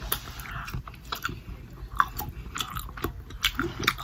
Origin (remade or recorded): recorded